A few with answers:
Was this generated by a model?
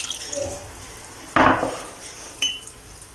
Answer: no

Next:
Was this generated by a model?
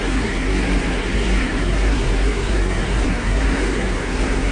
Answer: yes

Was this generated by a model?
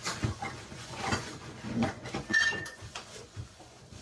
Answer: yes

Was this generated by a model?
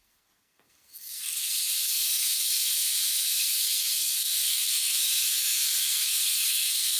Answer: yes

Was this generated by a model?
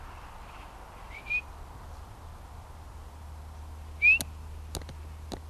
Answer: no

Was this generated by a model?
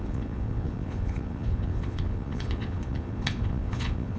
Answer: yes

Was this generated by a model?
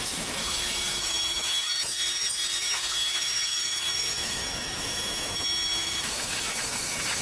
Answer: yes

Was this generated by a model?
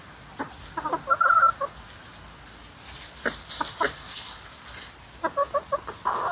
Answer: no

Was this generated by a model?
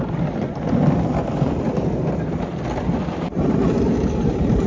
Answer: no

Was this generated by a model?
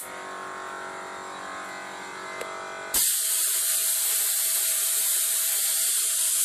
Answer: no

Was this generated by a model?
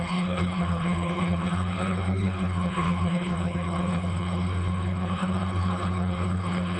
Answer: yes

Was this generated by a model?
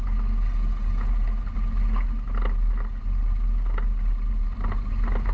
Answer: no